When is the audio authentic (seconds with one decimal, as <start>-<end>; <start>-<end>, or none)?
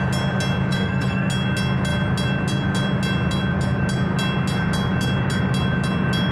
0.0-0.7; 1.3-6.3